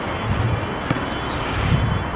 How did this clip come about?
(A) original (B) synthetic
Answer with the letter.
A